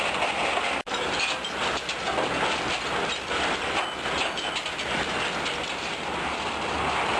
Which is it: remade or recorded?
recorded